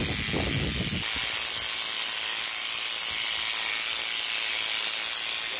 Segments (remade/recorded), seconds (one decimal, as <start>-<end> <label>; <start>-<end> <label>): 0.0-5.6 recorded